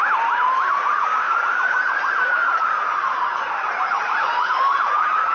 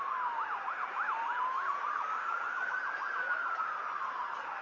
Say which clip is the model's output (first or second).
first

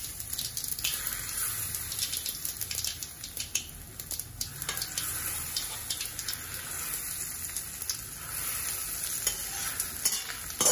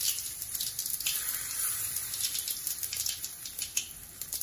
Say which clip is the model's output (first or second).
second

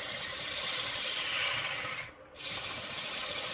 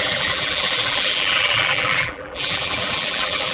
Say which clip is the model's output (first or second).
second